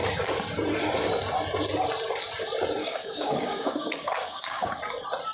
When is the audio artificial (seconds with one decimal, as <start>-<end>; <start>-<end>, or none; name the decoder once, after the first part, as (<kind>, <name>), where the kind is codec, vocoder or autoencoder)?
2.8-4.8 (codec, DAC)